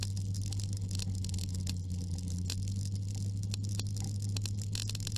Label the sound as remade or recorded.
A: recorded